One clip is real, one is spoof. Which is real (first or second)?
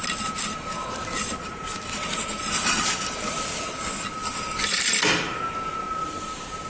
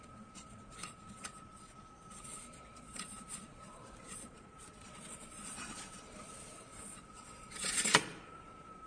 first